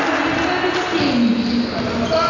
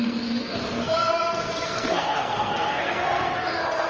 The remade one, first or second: second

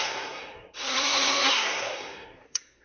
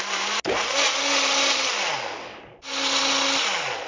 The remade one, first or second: first